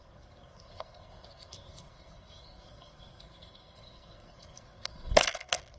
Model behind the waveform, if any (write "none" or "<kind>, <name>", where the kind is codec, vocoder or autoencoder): codec, SNAC